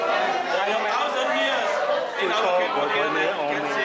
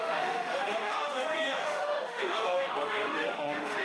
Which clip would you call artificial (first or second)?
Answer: second